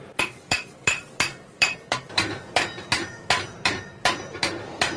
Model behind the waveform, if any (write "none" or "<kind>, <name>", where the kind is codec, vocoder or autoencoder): vocoder, BigVGAN v2